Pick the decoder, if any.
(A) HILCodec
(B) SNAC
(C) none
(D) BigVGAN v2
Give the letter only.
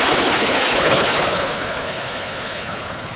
A